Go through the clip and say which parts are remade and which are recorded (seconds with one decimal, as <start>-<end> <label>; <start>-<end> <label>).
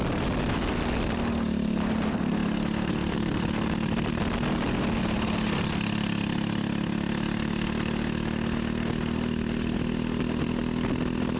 0.0-11.4 recorded